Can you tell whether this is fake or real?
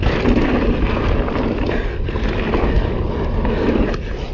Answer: real